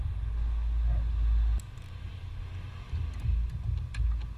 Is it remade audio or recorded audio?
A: recorded